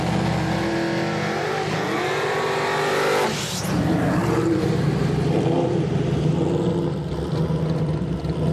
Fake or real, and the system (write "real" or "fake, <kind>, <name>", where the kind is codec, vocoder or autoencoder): real